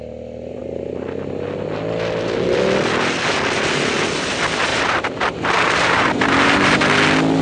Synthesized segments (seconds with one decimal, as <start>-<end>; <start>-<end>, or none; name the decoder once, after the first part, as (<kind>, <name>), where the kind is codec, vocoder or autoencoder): 4.7-6.8 (vocoder, BigVGAN v2)

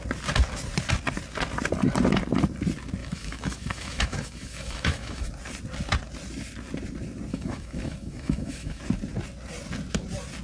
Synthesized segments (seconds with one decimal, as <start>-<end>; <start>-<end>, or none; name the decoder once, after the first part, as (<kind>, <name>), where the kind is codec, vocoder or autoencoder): 3.0-5.3 (autoencoder, DAC-VAE); 7.3-8.8

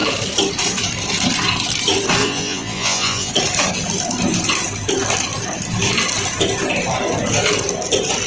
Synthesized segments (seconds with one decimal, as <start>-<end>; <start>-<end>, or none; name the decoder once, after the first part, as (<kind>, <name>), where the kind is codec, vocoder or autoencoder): 2.2-3.3 (vocoder, Vocos)

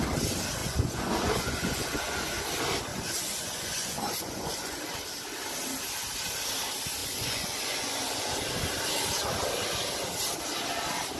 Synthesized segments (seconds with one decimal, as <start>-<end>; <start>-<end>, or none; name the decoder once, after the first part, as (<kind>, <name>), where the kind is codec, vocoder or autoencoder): 0.6-2.4 (vocoder, Vocos); 2.9-4.8; 7.0-8.3

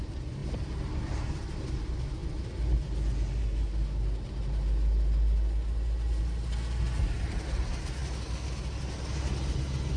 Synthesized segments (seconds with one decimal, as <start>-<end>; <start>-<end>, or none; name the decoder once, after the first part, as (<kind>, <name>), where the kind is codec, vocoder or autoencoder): none

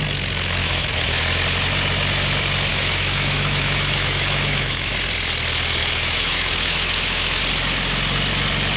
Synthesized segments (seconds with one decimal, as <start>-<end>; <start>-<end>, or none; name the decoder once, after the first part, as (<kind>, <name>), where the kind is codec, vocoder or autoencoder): 0.6-1.2 (autoencoder, DAC-VAE); 2.7-4.9; 5.8-7.4

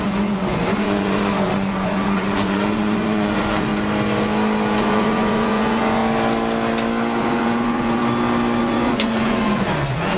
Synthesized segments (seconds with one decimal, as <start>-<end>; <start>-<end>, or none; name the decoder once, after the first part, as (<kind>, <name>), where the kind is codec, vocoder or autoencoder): 0.0-3.7 (vocoder, Vocos); 4.8-6.0; 7.2-8.0; 8.6-10.2

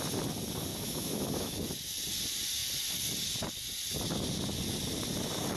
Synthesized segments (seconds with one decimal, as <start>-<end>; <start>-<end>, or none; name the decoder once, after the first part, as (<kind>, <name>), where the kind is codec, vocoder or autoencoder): 0.7-1.6 (autoencoder, DAC-VAE)